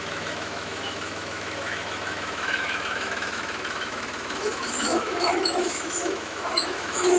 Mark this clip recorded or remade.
remade